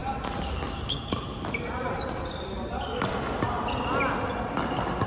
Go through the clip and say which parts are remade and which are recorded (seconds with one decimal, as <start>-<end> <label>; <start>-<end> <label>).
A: 0.0-3.1 remade; 3.1-5.1 recorded